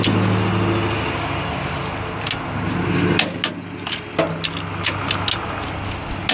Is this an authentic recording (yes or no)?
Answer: yes